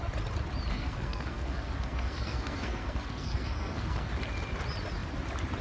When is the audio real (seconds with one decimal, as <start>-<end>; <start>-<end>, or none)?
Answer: 0.0-0.7; 4.1-5.6